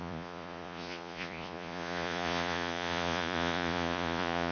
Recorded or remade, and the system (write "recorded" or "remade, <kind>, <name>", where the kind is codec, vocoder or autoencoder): remade, vocoder, Vocos